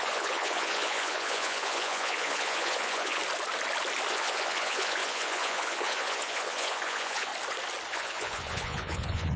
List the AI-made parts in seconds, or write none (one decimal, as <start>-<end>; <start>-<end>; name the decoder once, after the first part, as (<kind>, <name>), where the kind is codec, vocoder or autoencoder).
0.0-3.2 (vocoder, Vocos); 4.1-7.3; 7.9-9.4